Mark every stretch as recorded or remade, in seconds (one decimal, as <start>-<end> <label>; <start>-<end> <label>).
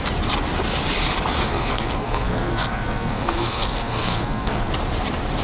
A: 0.0-1.5 recorded; 1.5-4.7 remade; 4.7-5.4 recorded